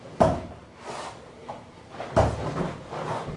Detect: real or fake real